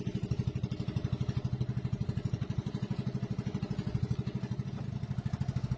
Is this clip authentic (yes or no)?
yes